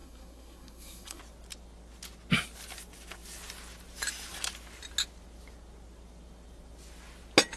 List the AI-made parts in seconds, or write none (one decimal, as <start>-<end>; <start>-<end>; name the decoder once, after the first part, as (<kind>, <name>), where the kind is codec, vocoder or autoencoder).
0.0-1.2 (codec, SNAC)